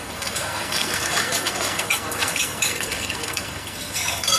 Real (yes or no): no